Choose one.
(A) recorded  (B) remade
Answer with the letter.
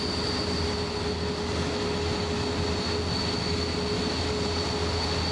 A